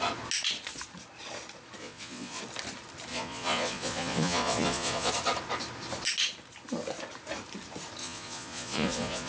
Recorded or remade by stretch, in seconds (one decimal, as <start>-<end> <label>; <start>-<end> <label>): 0.0-1.8 recorded; 1.8-2.4 remade; 2.4-3.1 recorded; 3.1-5.1 remade; 5.1-8.0 recorded; 8.0-9.3 remade